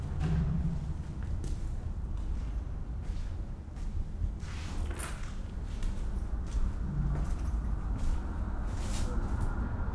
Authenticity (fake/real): real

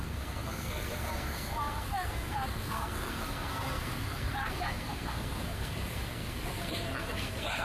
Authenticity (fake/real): fake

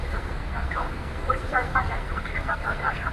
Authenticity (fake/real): fake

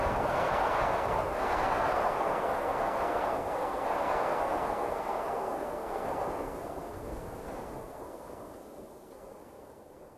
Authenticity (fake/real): fake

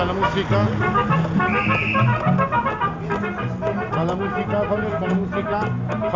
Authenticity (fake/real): real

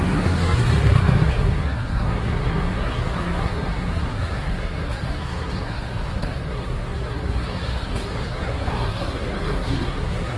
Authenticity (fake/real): fake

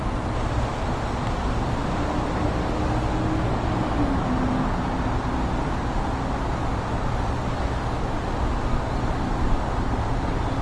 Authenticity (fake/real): real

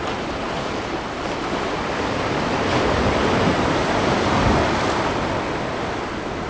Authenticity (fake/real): real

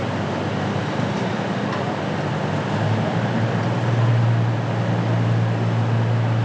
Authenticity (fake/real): real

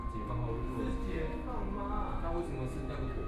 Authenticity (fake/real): real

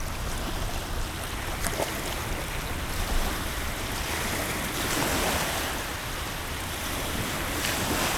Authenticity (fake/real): real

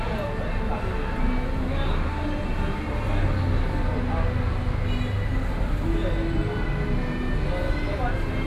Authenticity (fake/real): real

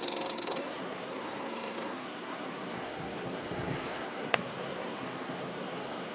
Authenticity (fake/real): fake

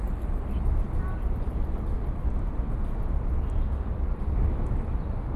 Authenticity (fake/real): real